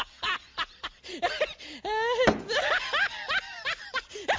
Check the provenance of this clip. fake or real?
real